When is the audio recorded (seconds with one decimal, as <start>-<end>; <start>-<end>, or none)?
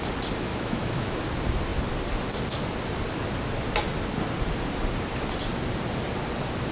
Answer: 0.0-0.5; 1.2-6.7